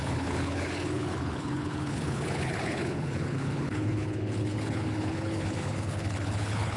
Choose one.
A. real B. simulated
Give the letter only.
B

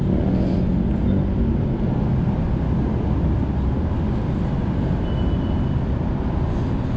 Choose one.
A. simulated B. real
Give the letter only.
B